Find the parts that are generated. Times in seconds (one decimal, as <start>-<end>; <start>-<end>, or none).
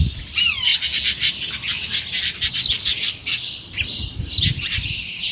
0.0-0.7; 2.5-5.3